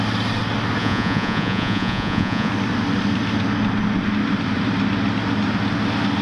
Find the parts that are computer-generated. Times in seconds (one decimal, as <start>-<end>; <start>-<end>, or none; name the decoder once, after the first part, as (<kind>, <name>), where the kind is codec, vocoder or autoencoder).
0.8-2.5 (vocoder, Vocos)